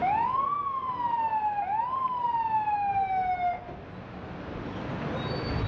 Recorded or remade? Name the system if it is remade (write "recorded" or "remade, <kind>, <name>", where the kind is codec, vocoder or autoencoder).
recorded